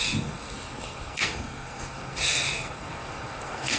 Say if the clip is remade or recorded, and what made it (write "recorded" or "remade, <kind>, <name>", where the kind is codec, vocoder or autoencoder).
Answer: remade, codec, SNAC